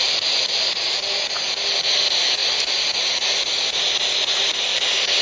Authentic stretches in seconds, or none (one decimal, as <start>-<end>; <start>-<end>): 0.0-5.2

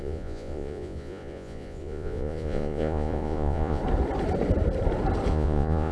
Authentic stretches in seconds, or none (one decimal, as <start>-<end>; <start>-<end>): 3.8-5.3

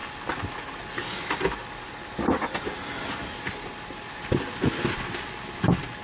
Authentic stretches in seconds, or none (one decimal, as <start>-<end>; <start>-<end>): 0.0-6.0

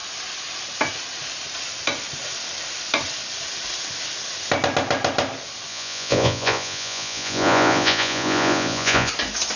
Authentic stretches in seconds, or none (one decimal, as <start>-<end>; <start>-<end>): 0.0-5.7; 9.1-9.6